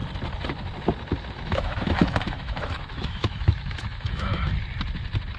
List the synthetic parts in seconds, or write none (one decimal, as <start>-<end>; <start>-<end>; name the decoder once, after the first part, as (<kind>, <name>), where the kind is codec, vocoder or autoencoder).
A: 1.3-4.5 (autoencoder, DAC-VAE)